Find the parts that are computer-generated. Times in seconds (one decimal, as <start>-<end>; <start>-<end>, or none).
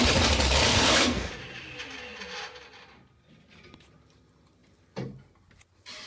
0.7-1.3